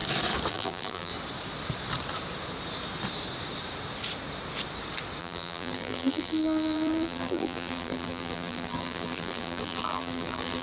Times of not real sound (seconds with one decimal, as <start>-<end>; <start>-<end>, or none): 0.5-1.1; 5.2-10.6